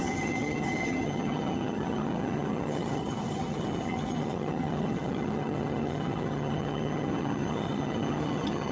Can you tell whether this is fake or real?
fake